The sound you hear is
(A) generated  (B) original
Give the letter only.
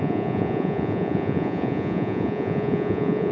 A